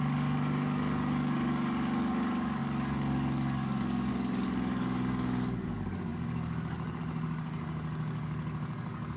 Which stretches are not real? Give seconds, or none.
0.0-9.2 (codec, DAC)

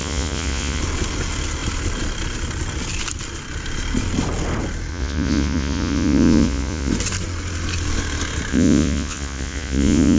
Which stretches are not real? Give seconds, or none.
0.0-0.8 (vocoder, Vocos); 4.9-6.9; 8.5-10.2

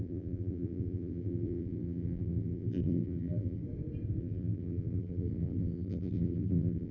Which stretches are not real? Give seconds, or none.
0.0-3.6 (vocoder, BigVGAN v2); 4.2-6.9

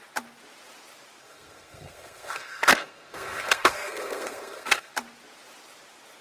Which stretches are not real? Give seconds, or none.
1.2-4.9 (codec, SNAC)

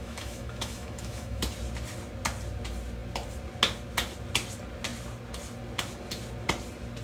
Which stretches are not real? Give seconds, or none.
0.0-1.4 (autoencoder, DAC-VAE)

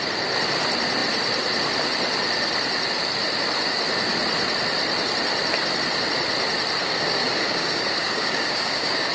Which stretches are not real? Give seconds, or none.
6.8-9.1 (codec, DAC)

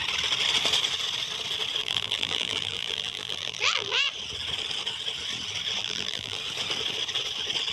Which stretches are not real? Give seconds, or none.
1.8-4.1 (vocoder, BigVGAN v2); 5.8-6.4